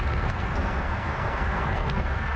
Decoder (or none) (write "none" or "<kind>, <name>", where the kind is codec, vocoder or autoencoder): codec, SNAC